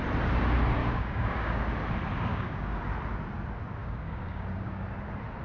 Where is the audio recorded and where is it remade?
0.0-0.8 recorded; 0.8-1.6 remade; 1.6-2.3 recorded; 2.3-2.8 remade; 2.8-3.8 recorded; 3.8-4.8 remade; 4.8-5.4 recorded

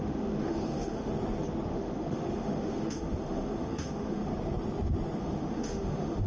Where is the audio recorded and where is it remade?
0.0-1.1 remade; 1.1-1.7 recorded; 1.7-4.3 remade; 4.3-5.2 recorded; 5.2-6.3 remade

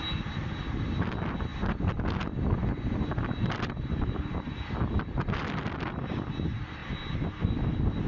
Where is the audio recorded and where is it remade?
0.0-8.1 recorded

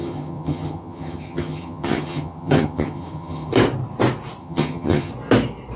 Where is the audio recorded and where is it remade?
0.0-3.5 remade; 3.5-4.4 recorded; 4.4-5.1 remade; 5.1-5.8 recorded